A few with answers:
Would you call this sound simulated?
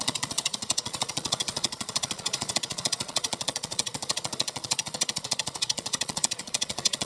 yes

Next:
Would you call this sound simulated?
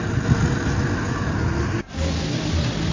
no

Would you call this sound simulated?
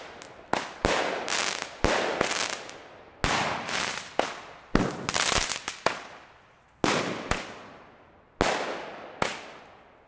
no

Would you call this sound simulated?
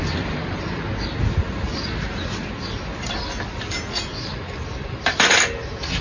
no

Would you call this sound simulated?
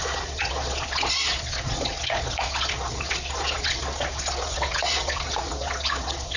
yes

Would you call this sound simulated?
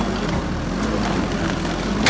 no